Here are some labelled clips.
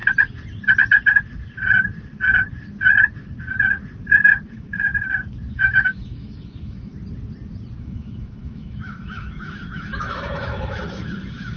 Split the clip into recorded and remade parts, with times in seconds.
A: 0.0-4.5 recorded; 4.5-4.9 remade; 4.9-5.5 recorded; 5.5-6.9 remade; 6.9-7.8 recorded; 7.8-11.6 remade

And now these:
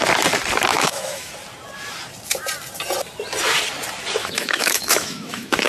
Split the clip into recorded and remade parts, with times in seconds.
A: 0.0-0.7 recorded; 0.7-1.3 remade; 1.3-4.2 recorded; 4.2-5.7 remade

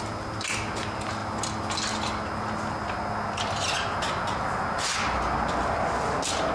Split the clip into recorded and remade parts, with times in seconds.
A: 0.0-6.5 recorded